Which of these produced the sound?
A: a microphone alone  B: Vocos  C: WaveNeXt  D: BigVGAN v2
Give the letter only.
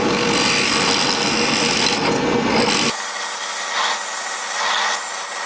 A